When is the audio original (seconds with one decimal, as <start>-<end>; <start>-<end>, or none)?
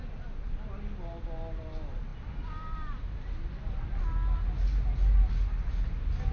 0.0-6.3